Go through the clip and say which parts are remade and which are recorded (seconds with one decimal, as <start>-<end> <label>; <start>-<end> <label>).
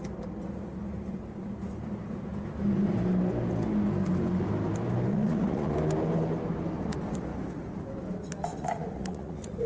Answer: 0.0-5.1 recorded; 5.1-5.7 remade; 5.7-8.5 recorded; 8.5-9.7 remade